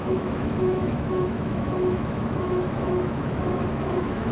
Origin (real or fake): fake